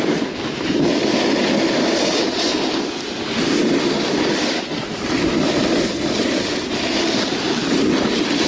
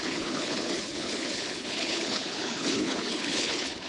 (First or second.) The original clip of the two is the first